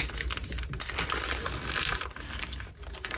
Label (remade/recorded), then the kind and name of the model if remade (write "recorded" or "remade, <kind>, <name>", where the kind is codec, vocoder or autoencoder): recorded